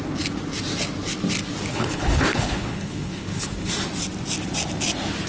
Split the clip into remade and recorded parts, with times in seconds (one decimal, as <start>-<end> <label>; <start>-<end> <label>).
0.0-1.7 recorded; 1.7-3.7 remade; 3.7-5.3 recorded